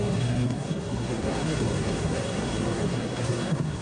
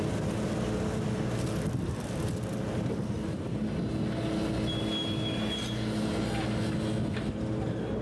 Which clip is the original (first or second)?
second